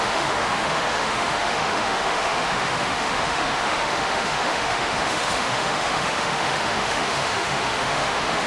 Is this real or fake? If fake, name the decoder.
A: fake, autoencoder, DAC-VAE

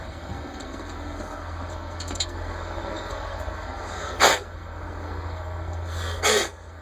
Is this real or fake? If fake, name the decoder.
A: fake, codec, SNAC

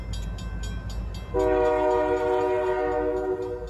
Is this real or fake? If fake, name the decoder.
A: real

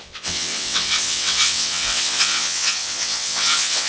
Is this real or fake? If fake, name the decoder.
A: fake, vocoder, WaveNeXt